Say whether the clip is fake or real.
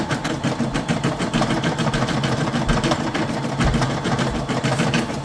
real